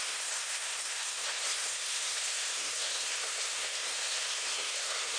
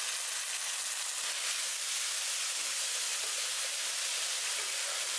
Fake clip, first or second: first